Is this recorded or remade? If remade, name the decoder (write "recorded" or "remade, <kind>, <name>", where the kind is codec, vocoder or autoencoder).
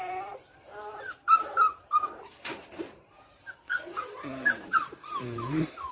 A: remade, vocoder, BigVGAN v2